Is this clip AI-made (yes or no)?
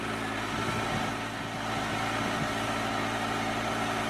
no